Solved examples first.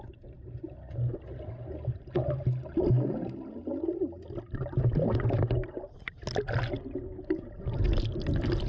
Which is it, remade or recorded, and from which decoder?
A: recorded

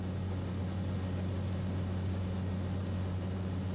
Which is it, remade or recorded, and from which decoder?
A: recorded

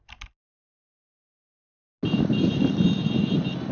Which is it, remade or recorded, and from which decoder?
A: recorded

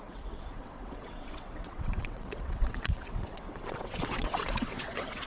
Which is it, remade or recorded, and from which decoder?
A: remade, vocoder, WaveNeXt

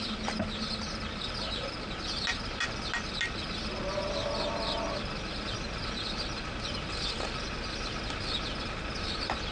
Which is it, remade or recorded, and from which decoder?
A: recorded